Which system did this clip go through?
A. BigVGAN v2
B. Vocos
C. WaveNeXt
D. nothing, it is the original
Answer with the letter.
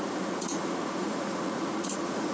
B